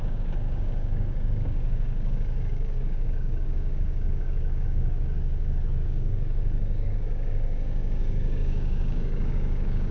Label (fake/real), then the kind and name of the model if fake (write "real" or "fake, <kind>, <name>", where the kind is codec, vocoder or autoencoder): fake, codec, DAC